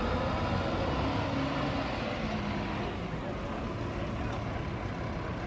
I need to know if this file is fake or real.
real